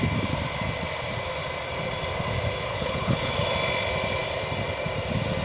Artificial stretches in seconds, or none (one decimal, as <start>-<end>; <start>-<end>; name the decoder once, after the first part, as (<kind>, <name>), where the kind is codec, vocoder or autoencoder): 2.7-3.3 (codec, HILCodec)